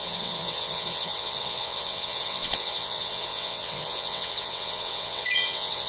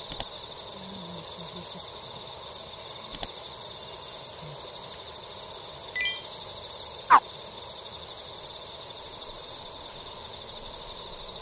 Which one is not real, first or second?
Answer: first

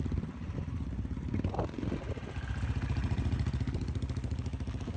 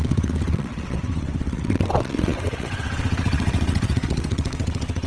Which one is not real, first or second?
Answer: second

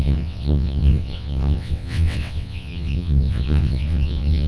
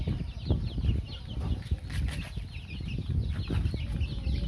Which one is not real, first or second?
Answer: first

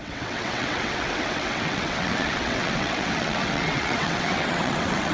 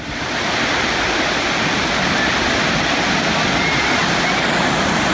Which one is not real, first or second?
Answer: first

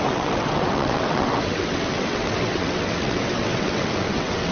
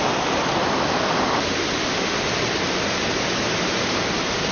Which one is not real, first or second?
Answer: first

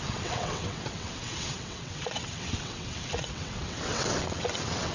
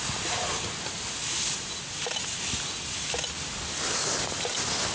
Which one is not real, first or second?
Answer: first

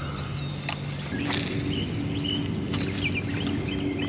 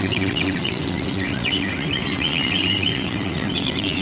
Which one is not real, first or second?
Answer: second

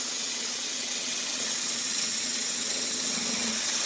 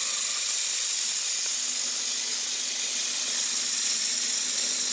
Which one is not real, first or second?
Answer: first